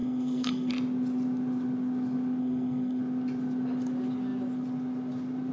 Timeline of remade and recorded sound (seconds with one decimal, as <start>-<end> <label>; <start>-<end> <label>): 0.0-0.7 remade; 0.7-2.4 recorded; 2.4-3.0 remade; 3.0-5.5 recorded